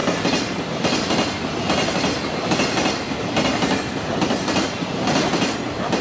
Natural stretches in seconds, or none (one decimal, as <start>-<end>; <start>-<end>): 0.0-6.0